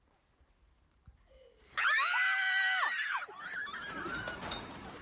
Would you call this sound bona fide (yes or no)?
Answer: yes